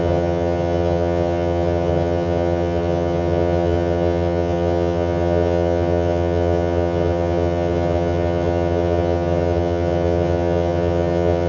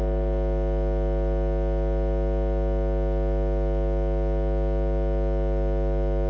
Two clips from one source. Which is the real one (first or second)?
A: second